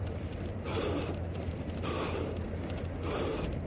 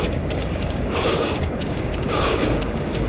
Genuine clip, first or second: first